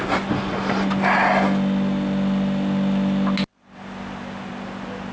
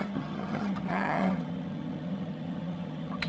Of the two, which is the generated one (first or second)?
second